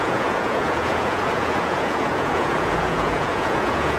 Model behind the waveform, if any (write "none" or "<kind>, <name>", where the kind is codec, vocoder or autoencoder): vocoder, Vocos